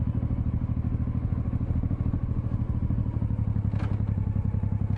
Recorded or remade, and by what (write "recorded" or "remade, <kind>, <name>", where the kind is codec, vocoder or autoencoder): recorded